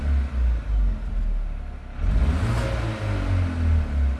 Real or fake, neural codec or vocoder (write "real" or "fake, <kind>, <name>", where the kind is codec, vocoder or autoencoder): real